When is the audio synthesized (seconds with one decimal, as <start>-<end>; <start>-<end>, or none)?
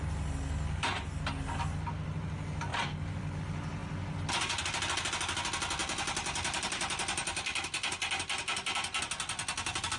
2.7-3.4; 5.8-9.0